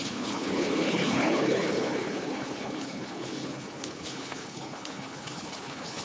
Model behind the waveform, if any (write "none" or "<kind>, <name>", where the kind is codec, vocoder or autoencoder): codec, HILCodec